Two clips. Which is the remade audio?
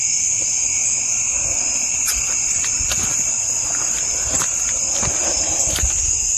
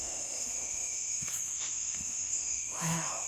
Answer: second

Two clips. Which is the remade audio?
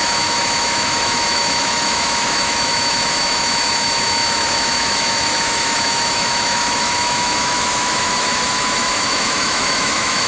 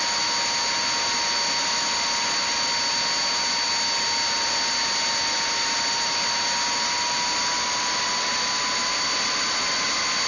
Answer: first